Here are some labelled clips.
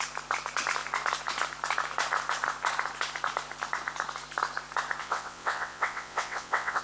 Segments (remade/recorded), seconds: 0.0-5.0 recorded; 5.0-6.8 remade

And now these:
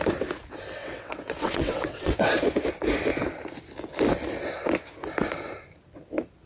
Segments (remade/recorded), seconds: 0.0-0.8 recorded; 0.8-2.3 remade; 2.3-6.5 recorded